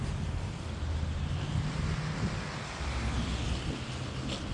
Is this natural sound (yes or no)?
yes